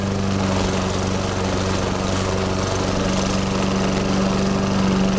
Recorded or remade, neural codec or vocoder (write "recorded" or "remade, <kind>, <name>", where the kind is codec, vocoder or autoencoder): recorded